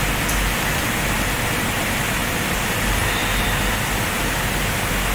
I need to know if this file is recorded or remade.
recorded